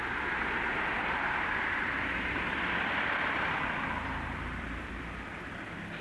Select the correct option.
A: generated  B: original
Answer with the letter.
A